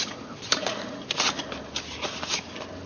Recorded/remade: recorded